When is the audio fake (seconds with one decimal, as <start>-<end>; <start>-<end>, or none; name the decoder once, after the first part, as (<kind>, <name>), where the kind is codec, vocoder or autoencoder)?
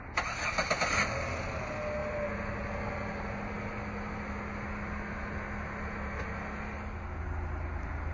none